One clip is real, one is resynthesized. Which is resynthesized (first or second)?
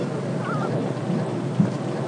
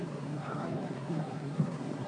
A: second